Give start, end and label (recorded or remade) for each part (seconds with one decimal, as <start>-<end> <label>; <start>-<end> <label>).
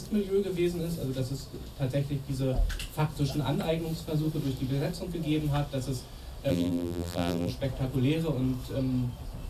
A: 0.0-6.5 recorded; 6.5-7.5 remade; 7.5-9.5 recorded